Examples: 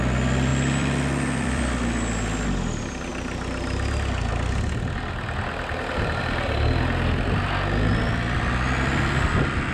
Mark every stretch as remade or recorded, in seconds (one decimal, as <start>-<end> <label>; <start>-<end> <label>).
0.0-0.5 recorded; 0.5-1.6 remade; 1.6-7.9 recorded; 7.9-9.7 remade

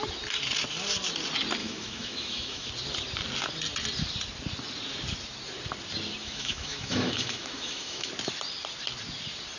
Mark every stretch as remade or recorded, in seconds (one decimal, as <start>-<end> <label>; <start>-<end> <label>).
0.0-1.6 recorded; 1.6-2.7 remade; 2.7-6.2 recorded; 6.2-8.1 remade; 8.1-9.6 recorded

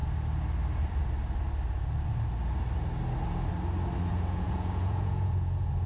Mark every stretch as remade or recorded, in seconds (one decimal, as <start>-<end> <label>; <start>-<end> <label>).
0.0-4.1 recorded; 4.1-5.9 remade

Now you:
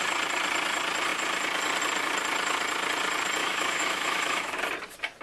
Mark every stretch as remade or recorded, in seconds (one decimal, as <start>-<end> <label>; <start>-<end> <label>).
0.0-3.4 recorded; 3.4-4.6 remade; 4.6-5.2 recorded